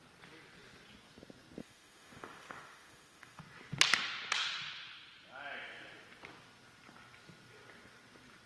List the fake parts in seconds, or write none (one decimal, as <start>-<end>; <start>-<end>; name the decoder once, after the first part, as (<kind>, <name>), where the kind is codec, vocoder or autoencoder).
1.6-3.4 (autoencoder, DAC-VAE)